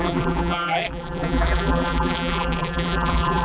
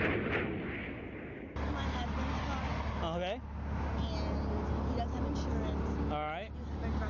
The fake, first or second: first